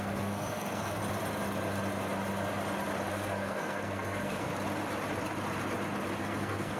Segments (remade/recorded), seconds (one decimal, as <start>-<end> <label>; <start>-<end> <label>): 0.0-1.0 remade; 1.0-3.1 recorded; 3.1-4.5 remade; 4.5-6.2 recorded; 6.2-6.8 remade